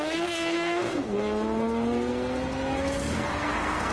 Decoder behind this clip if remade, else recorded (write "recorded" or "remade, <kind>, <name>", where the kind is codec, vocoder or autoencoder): remade, codec, SNAC